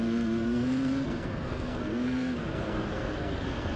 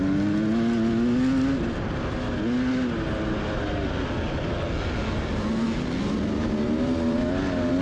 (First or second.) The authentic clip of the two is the second